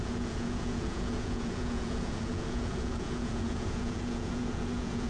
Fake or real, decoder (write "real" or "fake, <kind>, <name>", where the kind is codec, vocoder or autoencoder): fake, vocoder, Vocos